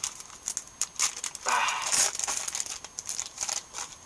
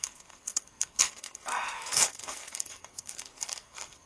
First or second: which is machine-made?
second